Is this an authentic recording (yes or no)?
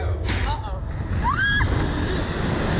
yes